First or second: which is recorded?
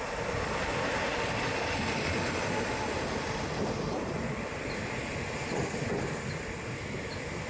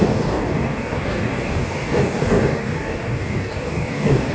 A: first